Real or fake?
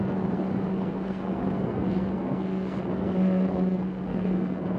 fake